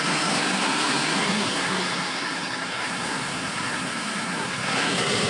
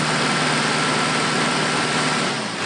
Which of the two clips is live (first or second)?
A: second